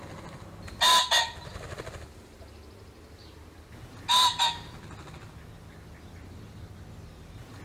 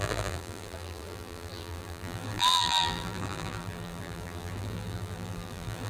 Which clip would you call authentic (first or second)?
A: first